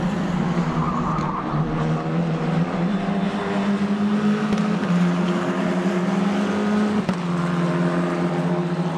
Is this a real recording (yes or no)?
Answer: yes